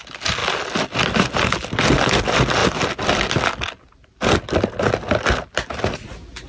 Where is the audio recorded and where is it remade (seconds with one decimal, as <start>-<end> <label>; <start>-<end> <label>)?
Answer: 0.0-6.5 recorded